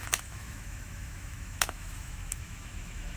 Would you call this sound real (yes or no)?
no